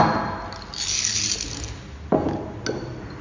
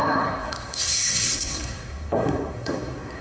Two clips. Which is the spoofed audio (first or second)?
second